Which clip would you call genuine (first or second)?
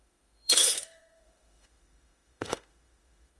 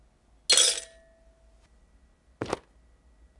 second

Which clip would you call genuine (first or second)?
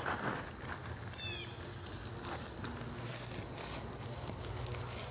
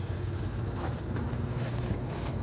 first